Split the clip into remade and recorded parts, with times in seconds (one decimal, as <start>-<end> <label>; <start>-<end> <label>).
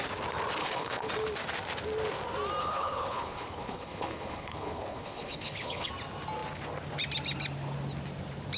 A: 0.0-0.6 recorded; 0.6-1.1 remade; 1.1-2.6 recorded; 2.6-5.9 remade; 5.9-8.6 recorded